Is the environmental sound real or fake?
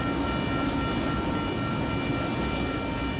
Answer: real